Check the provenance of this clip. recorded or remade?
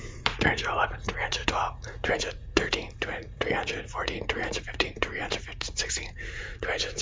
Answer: remade